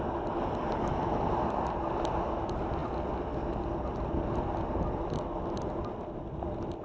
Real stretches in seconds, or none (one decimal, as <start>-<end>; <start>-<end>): 0.0-6.8